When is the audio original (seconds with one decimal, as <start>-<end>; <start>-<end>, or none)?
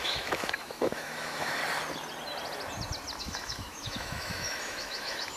1.6-3.2